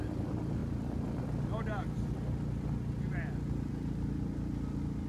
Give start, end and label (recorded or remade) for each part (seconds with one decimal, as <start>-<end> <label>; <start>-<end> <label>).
0.0-5.1 recorded